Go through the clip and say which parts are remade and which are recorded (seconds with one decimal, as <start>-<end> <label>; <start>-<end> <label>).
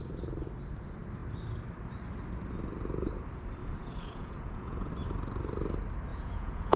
0.0-3.6 recorded; 3.6-4.9 remade; 4.9-6.1 recorded; 6.1-6.8 remade